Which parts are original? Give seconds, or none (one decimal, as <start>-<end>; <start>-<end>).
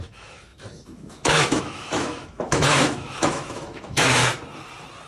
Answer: 4.2-5.1